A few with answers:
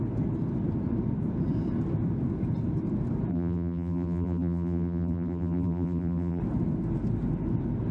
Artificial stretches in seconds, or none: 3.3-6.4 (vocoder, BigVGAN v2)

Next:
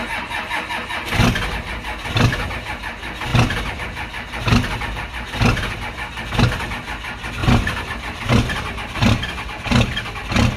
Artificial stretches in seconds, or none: none

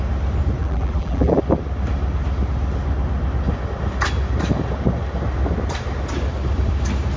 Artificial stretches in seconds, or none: 0.6-1.4 (vocoder, BigVGAN v2)

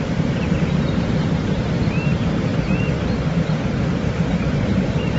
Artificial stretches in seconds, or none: 0.0-2.5 (vocoder, BigVGAN v2)